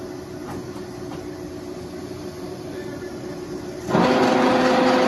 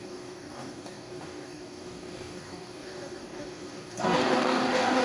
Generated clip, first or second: second